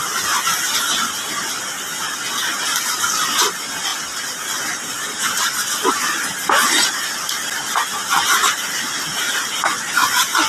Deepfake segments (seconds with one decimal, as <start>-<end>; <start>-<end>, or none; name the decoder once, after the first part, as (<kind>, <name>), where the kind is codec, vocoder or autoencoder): none